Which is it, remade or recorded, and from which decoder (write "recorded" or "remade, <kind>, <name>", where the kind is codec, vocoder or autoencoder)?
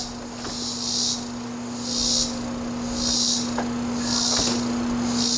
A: recorded